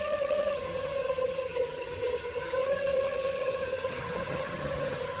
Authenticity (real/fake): fake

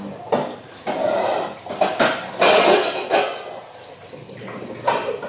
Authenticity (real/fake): real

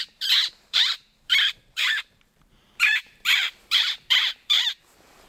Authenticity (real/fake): fake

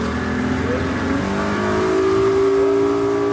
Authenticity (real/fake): real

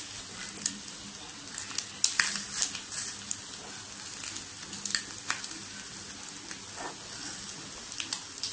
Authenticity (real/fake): real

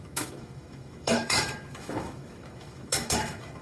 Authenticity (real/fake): fake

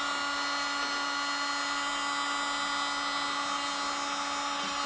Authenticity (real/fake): real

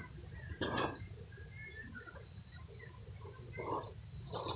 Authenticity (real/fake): real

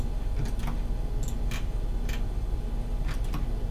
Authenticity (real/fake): real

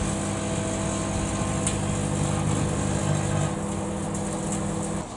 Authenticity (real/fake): real